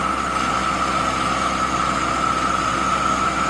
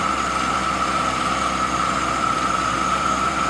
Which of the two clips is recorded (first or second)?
first